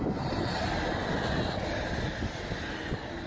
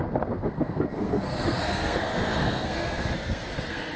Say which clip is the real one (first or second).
first